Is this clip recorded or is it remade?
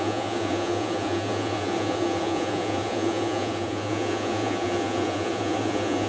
remade